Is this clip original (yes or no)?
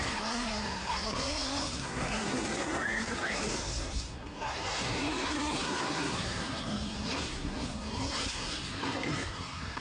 no